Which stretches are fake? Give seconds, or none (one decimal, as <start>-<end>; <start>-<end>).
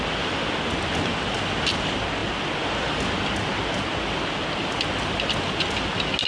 none